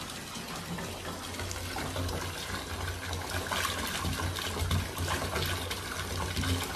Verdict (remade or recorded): recorded